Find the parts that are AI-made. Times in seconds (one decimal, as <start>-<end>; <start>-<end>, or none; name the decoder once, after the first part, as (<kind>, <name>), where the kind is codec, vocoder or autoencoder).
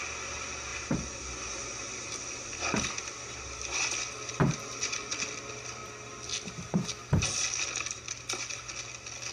none